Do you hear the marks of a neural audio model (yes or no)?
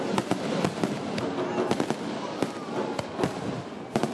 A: no